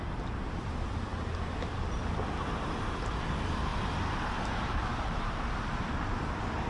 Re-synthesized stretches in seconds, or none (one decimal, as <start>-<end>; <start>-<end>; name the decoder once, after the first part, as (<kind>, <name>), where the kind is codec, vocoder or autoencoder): 0.0-6.7 (vocoder, BigVGAN v2)